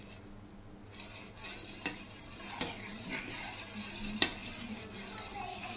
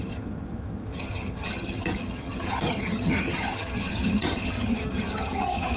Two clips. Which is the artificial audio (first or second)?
second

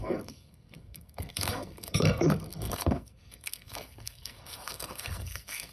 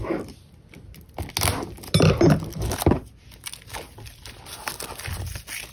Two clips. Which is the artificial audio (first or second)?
first